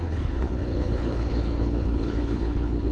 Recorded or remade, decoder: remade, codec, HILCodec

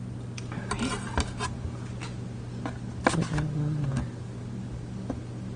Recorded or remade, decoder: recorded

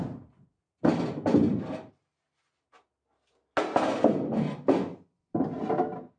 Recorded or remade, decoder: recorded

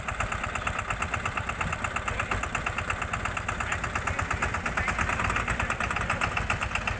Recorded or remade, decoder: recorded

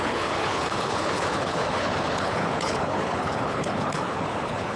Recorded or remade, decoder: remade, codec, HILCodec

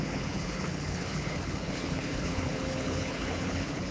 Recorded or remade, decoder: remade, codec, HILCodec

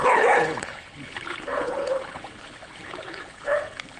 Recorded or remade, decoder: remade, codec, HILCodec